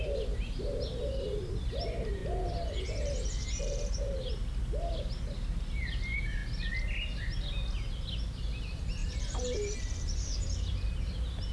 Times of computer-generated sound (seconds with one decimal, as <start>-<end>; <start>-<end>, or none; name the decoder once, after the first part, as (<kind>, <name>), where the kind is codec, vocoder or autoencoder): 0.0-2.2 (vocoder, BigVGAN v2); 3.6-4.4; 5.8-6.4; 8.6-11.5